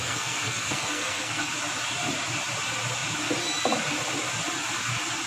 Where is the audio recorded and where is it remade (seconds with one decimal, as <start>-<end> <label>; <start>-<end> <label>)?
0.0-1.5 remade; 1.5-5.3 recorded